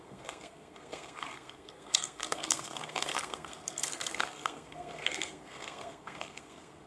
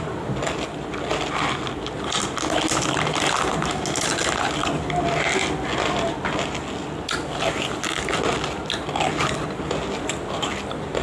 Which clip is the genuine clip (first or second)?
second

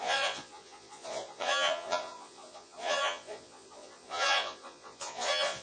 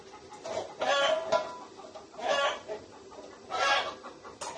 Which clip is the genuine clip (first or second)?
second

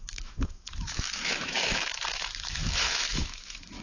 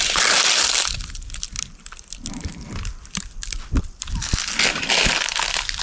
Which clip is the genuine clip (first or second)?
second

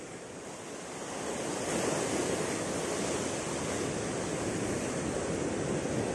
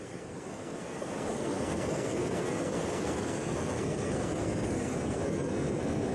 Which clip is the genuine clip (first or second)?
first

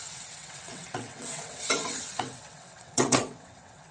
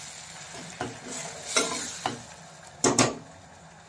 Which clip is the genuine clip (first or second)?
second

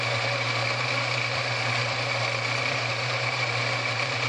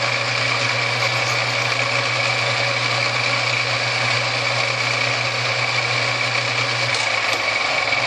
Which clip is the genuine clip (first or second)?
second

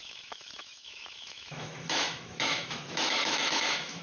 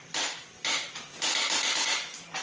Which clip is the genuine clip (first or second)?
second